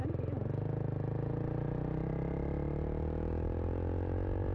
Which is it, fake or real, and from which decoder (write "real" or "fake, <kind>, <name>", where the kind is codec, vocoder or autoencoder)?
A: real